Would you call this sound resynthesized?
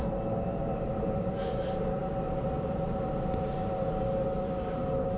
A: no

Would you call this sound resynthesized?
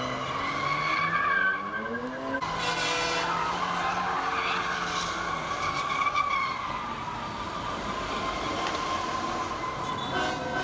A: no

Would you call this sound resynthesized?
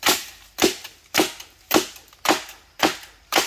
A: no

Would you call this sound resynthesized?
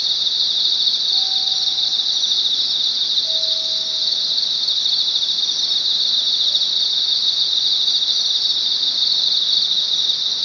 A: no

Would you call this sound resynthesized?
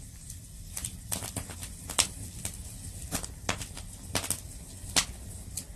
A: no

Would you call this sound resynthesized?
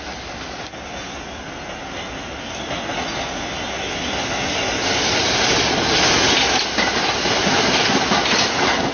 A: no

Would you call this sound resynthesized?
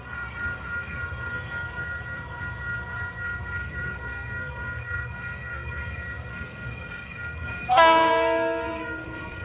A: yes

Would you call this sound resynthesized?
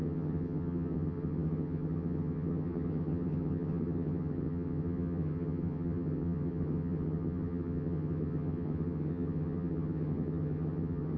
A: yes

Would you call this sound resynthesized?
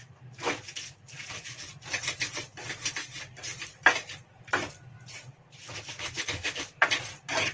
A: no